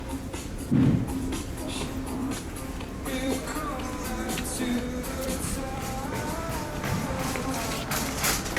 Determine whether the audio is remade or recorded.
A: remade